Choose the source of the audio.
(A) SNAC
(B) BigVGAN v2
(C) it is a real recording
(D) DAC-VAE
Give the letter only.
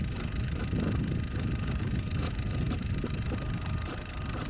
B